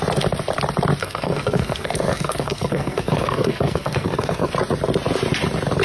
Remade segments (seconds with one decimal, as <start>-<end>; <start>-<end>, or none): 1.0-4.5